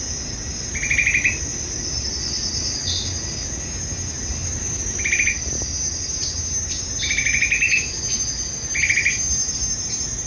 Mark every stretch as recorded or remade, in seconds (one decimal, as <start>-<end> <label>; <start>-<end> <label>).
0.0-1.5 recorded; 1.5-2.1 remade; 2.1-4.4 recorded; 4.4-5.0 remade; 5.0-10.3 recorded